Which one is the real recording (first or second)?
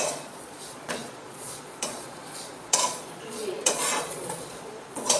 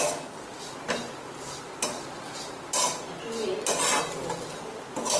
second